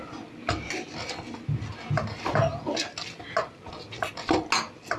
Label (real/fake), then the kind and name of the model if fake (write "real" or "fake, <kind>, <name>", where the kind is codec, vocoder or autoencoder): real